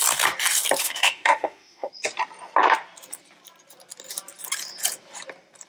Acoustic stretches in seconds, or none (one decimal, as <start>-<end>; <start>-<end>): 0.0-0.8; 1.9-5.7